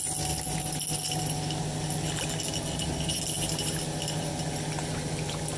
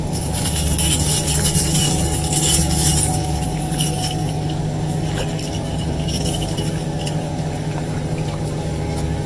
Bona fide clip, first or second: first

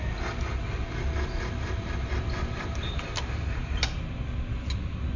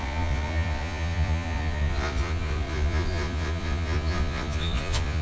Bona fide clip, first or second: first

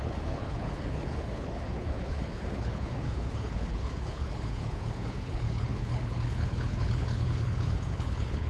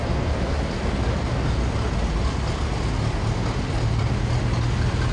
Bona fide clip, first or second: second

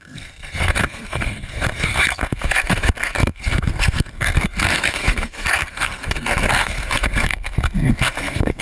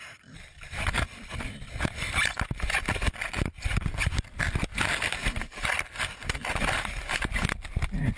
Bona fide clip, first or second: second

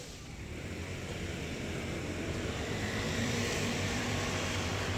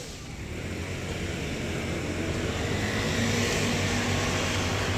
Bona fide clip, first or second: second